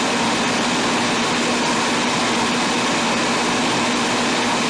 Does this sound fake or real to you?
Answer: real